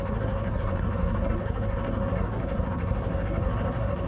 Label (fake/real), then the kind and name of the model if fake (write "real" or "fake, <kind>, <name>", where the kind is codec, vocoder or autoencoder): fake, codec, SNAC